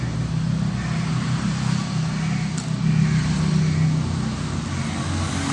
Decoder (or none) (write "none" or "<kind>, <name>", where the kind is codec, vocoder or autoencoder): none